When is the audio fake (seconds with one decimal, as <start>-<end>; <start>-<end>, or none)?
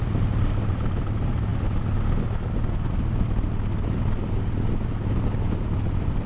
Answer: 0.0-1.5; 5.3-6.3